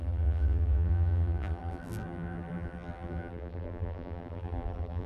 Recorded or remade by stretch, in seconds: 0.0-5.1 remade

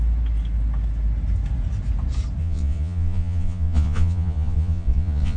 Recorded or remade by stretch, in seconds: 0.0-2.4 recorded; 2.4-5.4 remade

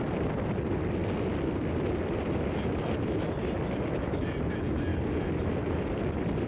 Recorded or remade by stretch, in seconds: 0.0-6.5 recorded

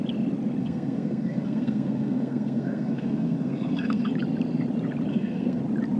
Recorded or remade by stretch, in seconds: 0.0-0.6 recorded; 0.6-4.1 remade; 4.1-5.1 recorded; 5.1-5.6 remade; 5.6-6.0 recorded

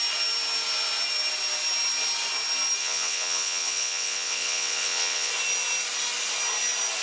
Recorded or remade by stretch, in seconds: 0.0-2.8 recorded; 2.8-5.3 remade; 5.3-7.0 recorded